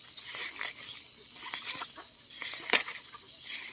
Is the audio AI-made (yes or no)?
no